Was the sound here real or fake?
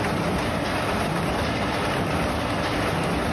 real